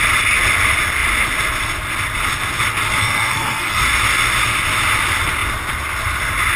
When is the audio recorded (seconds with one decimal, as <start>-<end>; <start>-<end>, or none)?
0.0-3.0; 3.8-6.6